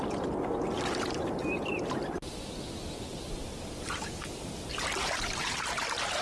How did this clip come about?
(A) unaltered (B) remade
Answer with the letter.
A